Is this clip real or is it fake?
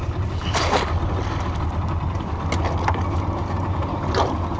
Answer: real